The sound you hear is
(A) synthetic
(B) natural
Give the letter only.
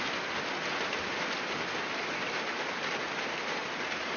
B